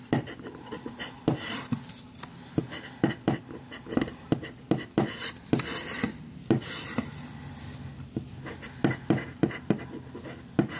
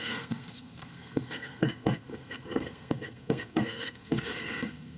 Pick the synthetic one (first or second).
second